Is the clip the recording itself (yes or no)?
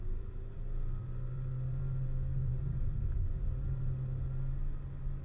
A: yes